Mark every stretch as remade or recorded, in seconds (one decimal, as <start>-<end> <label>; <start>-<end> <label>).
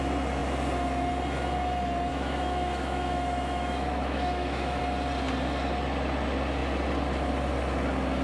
0.0-2.1 recorded; 2.1-4.8 remade; 4.8-8.2 recorded